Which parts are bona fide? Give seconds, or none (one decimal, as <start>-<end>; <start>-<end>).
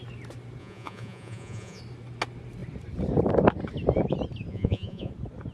0.0-0.6; 1.8-4.5; 5.1-5.5